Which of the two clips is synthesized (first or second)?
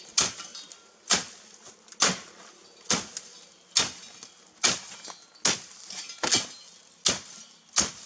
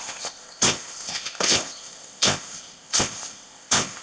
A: second